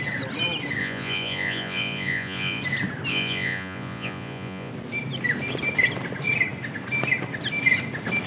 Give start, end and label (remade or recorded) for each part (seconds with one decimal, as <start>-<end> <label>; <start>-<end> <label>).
0.0-0.8 recorded; 0.8-2.6 remade; 2.6-3.1 recorded; 3.1-4.7 remade; 4.7-8.3 recorded